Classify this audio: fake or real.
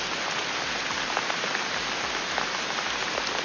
real